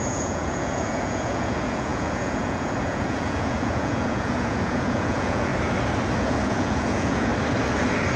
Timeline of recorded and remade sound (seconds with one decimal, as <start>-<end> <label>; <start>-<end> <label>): 0.0-5.5 remade; 5.5-6.2 recorded; 6.2-7.3 remade; 7.3-8.2 recorded

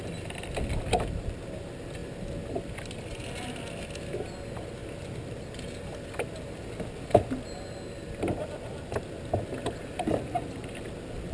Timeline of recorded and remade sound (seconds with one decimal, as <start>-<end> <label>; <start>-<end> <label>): 0.0-11.3 recorded

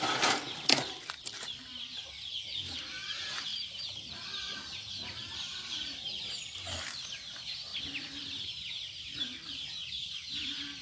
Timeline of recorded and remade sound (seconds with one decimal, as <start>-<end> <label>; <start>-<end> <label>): 0.0-3.5 recorded; 3.5-6.3 remade; 6.3-7.7 recorded; 7.7-9.7 remade; 9.7-10.8 recorded